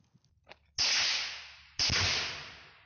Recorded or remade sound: recorded